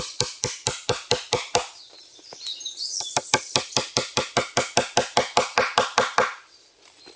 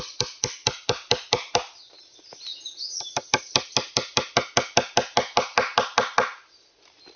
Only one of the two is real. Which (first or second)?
second